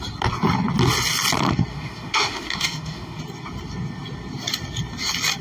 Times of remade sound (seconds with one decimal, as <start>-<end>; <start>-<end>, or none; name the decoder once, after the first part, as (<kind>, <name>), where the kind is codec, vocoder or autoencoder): 1.7-3.2 (autoencoder, DAC-VAE)